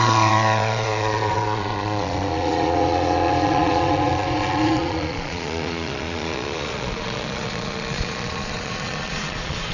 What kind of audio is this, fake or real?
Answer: fake